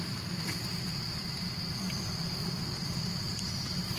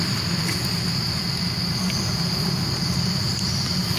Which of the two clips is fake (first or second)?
first